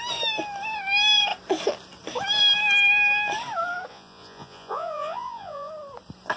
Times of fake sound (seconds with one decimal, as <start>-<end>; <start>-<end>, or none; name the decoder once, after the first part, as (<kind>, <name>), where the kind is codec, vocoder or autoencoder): 3.9-5.7 (vocoder, Vocos)